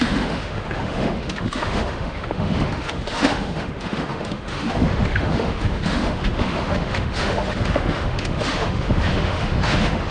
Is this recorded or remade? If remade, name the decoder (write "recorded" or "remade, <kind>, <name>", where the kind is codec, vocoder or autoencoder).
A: remade, autoencoder, DAC-VAE